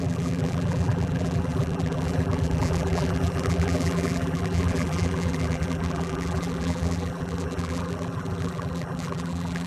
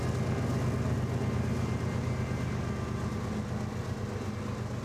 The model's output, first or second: first